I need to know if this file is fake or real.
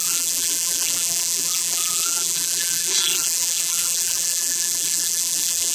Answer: fake